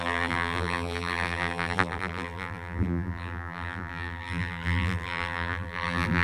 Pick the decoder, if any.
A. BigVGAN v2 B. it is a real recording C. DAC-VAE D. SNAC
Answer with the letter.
A